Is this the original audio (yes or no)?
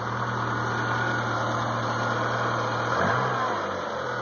yes